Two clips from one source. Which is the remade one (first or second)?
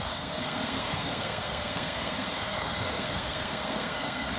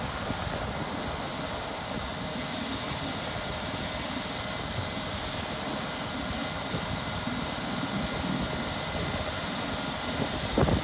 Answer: first